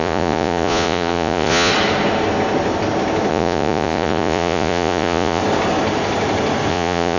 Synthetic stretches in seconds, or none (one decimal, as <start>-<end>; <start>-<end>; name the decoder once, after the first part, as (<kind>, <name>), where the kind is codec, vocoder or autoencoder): 0.0-1.7 (vocoder, Vocos); 3.3-5.4; 6.7-7.2